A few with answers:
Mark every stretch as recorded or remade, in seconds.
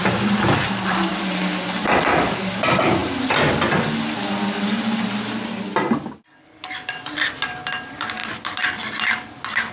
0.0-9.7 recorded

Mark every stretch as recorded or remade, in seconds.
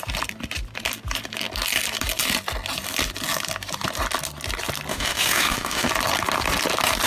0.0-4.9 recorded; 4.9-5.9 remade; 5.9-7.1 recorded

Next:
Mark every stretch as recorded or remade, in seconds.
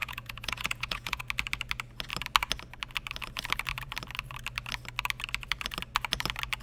0.0-1.2 remade; 1.2-6.6 recorded